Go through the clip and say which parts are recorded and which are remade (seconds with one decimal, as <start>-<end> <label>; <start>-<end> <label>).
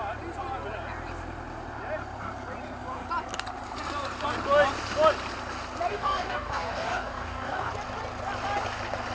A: 0.0-5.9 recorded; 5.9-7.7 remade; 7.7-9.1 recorded